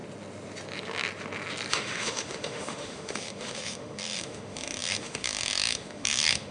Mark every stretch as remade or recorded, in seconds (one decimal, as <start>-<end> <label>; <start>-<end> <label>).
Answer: 0.0-1.7 recorded; 1.7-6.5 remade